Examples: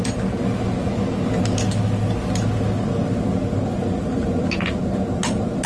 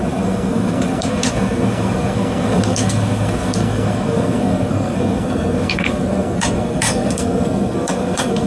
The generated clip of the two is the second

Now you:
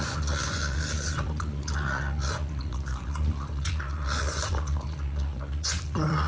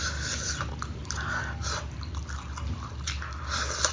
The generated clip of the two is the first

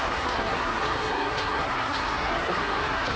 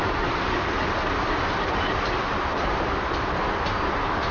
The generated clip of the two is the first